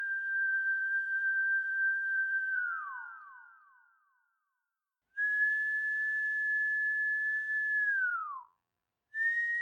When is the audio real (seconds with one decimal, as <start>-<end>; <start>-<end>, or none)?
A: 2.8-8.1; 8.9-9.6